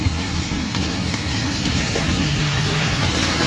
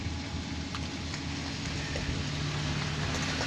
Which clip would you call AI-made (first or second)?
first